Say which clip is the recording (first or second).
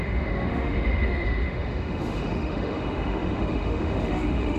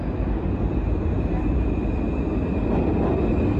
second